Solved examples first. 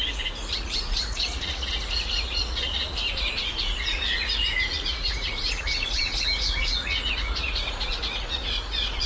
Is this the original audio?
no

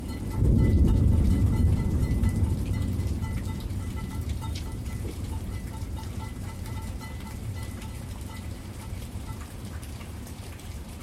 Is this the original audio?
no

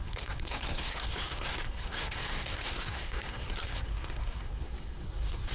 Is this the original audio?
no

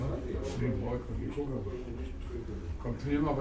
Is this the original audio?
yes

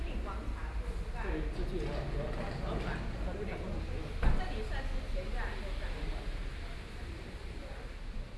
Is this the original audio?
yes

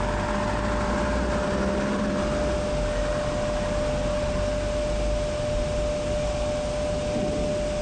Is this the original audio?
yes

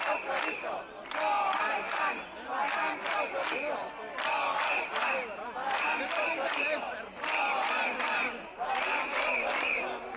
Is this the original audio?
yes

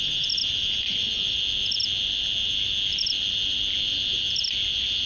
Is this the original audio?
yes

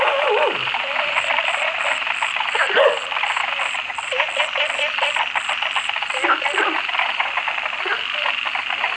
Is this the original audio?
yes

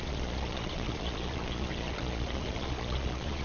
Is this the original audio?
no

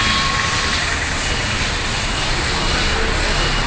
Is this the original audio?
yes